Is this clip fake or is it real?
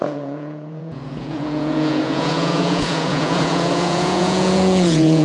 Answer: fake